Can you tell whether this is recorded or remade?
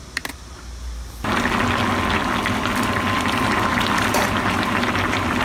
recorded